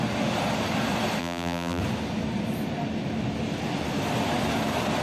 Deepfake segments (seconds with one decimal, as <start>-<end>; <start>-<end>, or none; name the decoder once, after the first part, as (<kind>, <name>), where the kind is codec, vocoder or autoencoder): 1.2-1.8 (vocoder, BigVGAN v2)